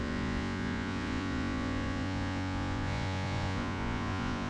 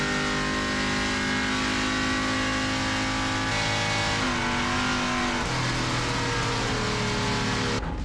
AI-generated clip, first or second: first